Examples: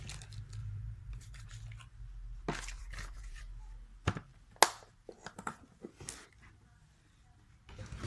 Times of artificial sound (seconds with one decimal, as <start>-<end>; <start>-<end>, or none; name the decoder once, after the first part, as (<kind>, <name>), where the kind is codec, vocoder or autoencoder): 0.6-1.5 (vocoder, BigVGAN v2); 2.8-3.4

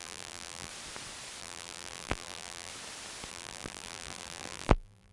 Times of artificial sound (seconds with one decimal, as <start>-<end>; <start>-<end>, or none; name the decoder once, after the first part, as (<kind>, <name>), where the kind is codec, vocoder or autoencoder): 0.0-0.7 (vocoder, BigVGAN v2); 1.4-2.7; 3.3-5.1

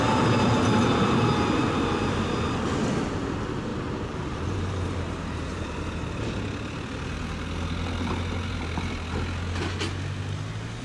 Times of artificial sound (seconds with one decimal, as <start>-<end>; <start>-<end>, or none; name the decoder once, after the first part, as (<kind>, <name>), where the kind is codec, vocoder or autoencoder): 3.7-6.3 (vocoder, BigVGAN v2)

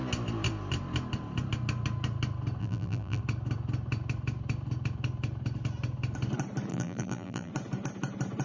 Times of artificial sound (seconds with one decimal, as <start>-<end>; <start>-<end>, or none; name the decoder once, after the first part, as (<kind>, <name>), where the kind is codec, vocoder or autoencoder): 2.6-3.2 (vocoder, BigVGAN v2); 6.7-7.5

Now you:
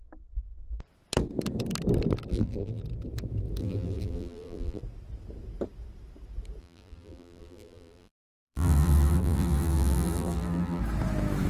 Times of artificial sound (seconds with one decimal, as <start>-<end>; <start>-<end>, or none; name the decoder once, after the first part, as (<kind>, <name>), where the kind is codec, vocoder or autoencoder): 2.3-2.8 (vocoder, BigVGAN v2); 3.6-4.8; 6.6-10.8

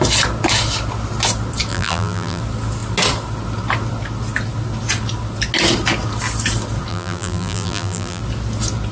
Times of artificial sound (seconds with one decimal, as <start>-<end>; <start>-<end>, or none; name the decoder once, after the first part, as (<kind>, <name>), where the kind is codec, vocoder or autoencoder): 1.7-2.4 (vocoder, BigVGAN v2); 6.9-8.2